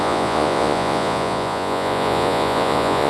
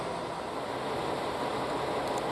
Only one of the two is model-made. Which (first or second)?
first